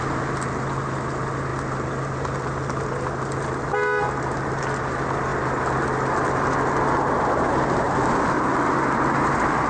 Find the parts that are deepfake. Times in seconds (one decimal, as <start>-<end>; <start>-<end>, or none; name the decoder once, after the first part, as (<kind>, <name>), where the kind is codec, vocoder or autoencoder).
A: none